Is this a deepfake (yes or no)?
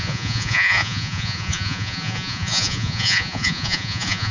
yes